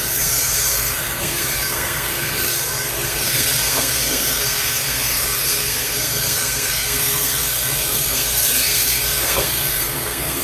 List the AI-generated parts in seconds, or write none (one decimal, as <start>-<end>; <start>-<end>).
0.0-10.4